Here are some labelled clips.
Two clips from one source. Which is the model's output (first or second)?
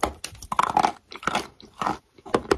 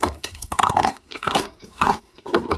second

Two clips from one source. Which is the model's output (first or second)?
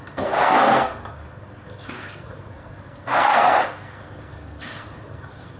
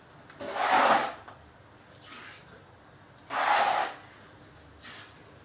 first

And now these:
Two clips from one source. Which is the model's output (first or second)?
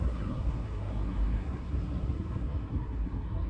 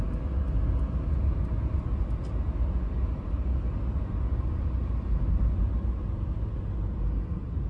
first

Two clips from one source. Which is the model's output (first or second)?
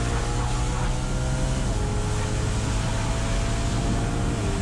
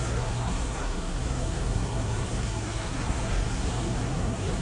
second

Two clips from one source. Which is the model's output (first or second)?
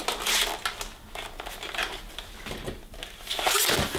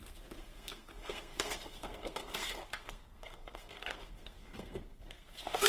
second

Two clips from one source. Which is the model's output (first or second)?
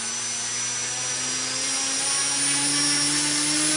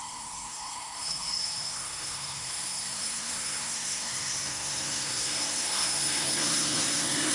second